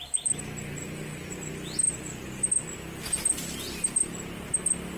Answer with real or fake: real